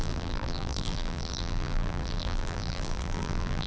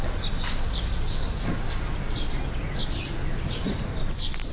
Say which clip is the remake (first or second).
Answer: first